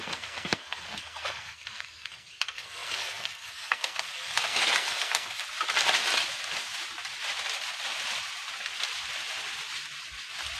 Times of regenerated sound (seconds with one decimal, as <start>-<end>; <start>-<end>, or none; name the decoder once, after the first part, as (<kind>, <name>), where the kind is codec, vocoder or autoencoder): 0.0-5.4 (codec, SNAC)

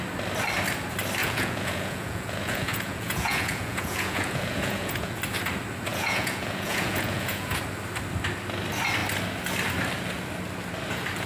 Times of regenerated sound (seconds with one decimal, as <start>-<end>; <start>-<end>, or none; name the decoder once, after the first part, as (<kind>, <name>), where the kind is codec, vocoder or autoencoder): 1.2-5.2 (vocoder, Vocos); 5.9-7.6

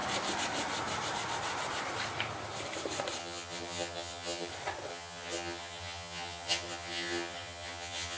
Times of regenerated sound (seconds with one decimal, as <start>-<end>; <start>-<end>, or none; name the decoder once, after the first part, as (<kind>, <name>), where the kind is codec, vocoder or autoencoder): 3.2-4.5 (vocoder, HiFi-GAN); 4.9-8.2

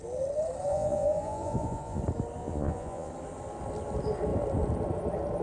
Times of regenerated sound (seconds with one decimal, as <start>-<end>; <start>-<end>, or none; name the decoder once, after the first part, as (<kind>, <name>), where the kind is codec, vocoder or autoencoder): 0.7-2.0 (vocoder, Vocos); 2.4-3.1

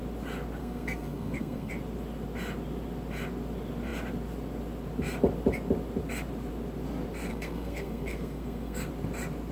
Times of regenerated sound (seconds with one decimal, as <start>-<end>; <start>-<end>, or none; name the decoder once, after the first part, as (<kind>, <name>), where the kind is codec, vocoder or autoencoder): 0.6-1.7 (codec, SNAC); 7.3-8.9

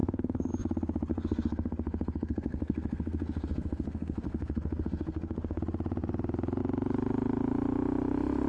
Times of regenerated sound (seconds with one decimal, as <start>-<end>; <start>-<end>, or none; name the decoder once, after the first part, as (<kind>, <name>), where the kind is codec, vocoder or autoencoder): 0.0-0.5 (codec, SNAC); 1.1-5.6